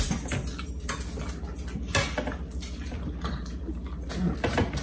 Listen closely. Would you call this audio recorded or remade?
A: recorded